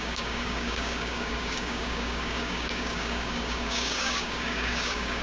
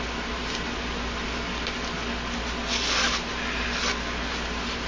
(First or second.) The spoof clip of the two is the first